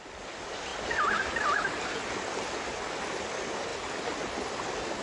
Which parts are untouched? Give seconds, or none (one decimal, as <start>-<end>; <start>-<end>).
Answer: 0.0-5.0

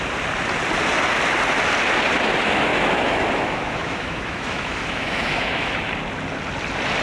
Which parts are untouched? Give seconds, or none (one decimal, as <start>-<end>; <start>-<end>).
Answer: 0.0-2.7; 5.9-7.0

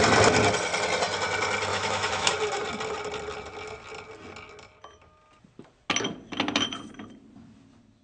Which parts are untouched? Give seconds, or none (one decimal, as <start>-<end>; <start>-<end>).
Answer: 0.0-1.7; 2.3-8.0

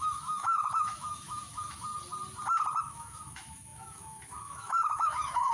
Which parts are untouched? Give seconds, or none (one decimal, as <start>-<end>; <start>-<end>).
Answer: 1.9-2.8

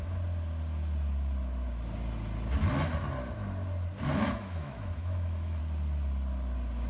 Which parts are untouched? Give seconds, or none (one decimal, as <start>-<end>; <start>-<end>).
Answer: 0.0-4.2; 5.6-6.9